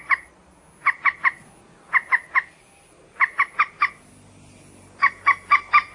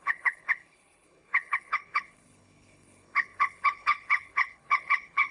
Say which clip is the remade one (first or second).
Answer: second